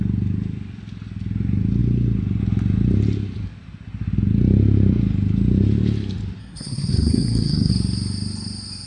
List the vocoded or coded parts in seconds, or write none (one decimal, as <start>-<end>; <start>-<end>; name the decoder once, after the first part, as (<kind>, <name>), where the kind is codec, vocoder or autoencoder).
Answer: 6.4-7.7 (codec, SNAC)